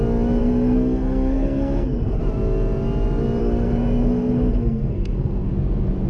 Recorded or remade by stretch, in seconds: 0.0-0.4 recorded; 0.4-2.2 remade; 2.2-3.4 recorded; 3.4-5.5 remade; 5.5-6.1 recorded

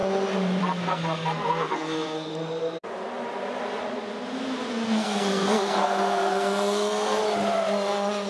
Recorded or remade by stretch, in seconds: 0.0-0.6 recorded; 0.6-2.3 remade; 2.3-4.7 recorded; 4.7-7.2 remade; 7.2-8.3 recorded

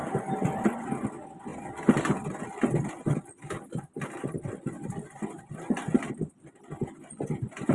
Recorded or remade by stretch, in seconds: 0.0-7.7 recorded